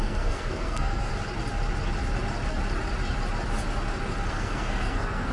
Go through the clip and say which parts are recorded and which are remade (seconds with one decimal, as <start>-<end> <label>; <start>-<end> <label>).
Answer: 0.0-1.1 remade; 1.1-4.3 recorded; 4.3-5.3 remade